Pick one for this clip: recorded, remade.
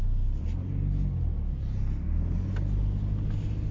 recorded